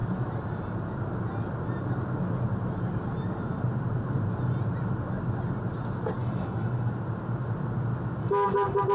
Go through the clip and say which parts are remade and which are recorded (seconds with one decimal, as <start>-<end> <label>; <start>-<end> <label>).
0.0-6.2 recorded; 6.2-6.9 remade; 6.9-8.2 recorded; 8.2-8.9 remade

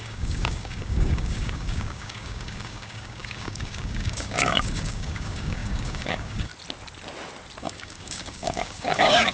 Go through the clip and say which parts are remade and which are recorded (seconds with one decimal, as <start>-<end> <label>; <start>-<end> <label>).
0.0-6.5 remade; 6.5-7.6 recorded; 7.6-9.3 remade

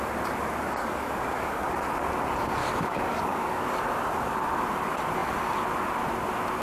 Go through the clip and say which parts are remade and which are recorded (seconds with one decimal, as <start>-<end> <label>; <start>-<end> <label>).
0.0-0.8 recorded; 0.8-1.7 remade; 1.7-2.6 recorded; 2.6-3.8 remade; 3.8-6.6 recorded